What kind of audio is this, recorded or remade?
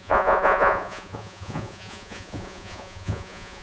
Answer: remade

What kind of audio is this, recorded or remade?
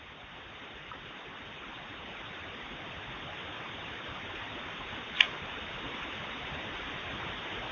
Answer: recorded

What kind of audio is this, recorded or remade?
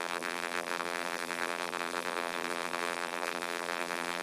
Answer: remade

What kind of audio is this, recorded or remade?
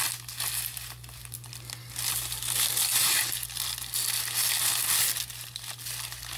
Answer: recorded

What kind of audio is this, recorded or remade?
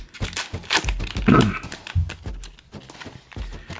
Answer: recorded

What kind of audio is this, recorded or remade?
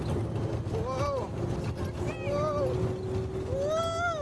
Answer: recorded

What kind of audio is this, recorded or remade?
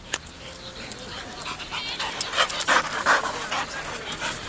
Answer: recorded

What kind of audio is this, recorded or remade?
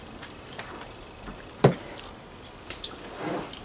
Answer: remade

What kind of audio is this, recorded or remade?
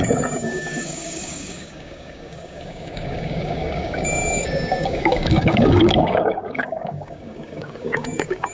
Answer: remade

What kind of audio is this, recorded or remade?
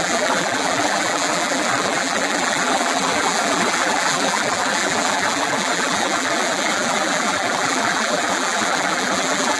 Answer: remade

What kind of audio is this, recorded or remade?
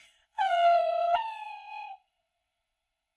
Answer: remade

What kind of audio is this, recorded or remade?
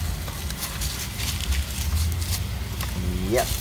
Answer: recorded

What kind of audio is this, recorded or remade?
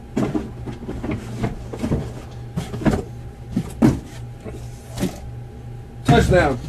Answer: recorded